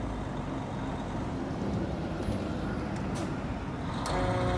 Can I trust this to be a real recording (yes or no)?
yes